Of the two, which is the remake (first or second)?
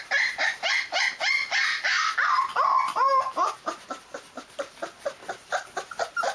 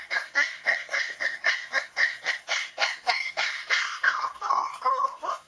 second